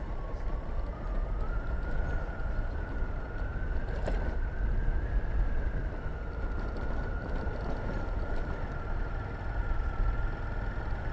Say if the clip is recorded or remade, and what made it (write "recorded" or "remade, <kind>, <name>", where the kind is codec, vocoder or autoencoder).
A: recorded